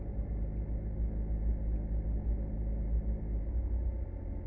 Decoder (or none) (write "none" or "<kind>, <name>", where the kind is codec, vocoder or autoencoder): none